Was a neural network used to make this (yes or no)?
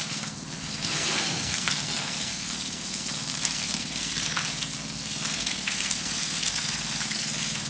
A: yes